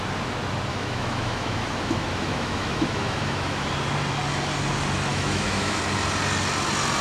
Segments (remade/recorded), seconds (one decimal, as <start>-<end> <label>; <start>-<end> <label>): 0.0-0.7 recorded; 0.7-3.7 remade; 3.7-5.1 recorded; 5.1-5.8 remade; 5.8-7.0 recorded